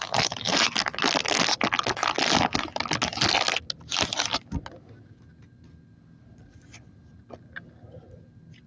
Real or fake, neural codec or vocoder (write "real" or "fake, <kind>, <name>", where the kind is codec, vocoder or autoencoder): real